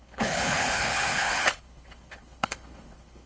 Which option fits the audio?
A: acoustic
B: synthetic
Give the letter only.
B